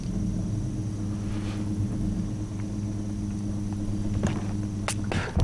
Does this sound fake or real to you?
real